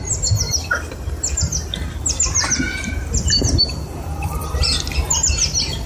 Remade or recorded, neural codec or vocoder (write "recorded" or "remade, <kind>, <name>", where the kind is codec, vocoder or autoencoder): recorded